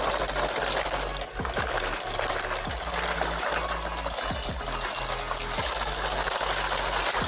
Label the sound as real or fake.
real